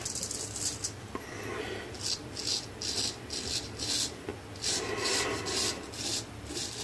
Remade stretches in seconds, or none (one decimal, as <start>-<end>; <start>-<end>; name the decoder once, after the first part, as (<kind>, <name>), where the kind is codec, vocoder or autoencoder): none